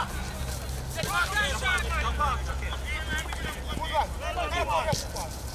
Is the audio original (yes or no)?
yes